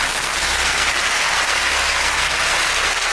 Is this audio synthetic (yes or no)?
yes